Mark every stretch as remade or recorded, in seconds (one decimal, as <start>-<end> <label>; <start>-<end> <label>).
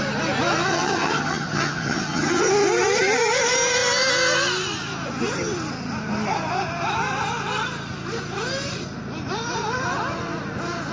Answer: 0.0-0.7 recorded; 0.7-2.5 remade; 2.5-10.9 recorded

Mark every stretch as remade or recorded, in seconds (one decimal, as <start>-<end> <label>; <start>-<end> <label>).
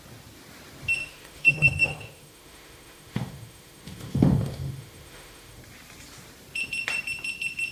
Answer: 0.0-1.0 recorded; 1.0-5.6 remade; 5.6-7.7 recorded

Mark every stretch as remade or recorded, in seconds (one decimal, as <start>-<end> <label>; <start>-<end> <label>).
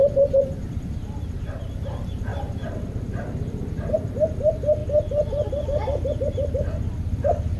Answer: 0.0-2.3 remade; 2.3-3.7 recorded; 3.7-4.8 remade; 4.8-5.6 recorded; 5.6-7.6 remade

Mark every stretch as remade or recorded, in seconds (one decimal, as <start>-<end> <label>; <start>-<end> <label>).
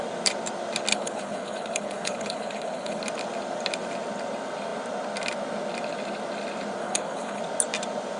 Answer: 0.0-0.9 recorded; 0.9-3.0 remade; 3.0-6.8 recorded; 6.8-7.4 remade; 7.4-8.2 recorded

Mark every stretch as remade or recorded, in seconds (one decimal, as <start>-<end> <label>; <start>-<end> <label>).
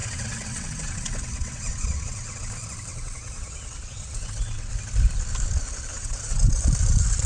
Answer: 0.0-2.5 remade; 2.5-2.9 recorded; 2.9-4.7 remade; 4.7-5.9 recorded; 5.9-6.6 remade; 6.6-7.3 recorded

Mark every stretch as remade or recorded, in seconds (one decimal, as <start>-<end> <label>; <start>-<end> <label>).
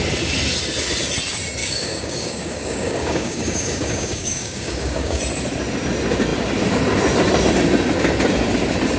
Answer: 0.0-1.6 recorded; 1.6-5.2 remade; 5.2-9.0 recorded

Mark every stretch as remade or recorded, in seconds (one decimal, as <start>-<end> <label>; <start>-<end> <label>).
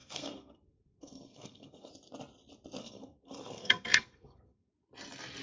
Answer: 0.0-1.9 remade; 1.9-2.8 recorded; 2.8-4.7 remade; 4.7-5.4 recorded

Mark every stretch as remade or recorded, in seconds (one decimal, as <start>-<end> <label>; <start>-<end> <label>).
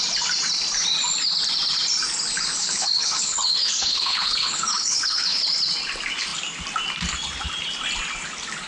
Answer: 0.0-2.6 recorded; 2.6-5.4 remade; 5.4-8.7 recorded